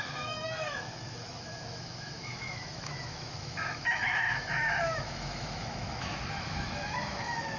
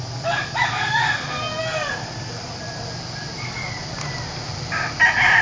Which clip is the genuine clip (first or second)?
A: second